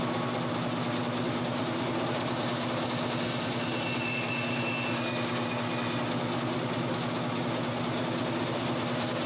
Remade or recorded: recorded